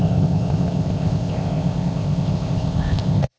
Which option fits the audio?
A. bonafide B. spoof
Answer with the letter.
B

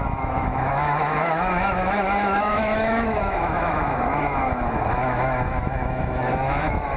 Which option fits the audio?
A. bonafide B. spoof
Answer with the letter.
B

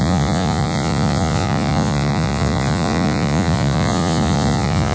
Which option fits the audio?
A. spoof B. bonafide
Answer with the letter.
A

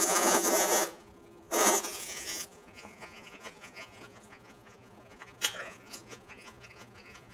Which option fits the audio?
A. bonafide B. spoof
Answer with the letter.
B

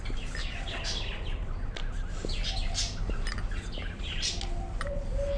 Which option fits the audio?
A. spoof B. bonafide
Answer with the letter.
B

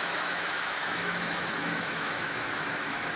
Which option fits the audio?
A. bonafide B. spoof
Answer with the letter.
B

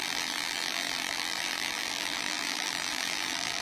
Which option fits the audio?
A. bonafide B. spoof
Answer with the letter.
B